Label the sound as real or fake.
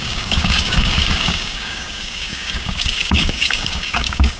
fake